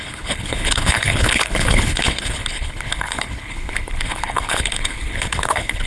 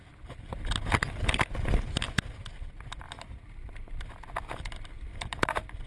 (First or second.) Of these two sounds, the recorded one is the second